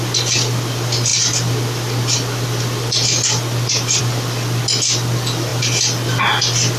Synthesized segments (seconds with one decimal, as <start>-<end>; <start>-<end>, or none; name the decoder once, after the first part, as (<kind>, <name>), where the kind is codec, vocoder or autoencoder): none